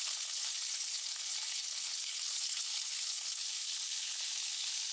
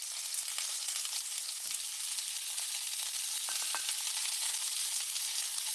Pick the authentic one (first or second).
second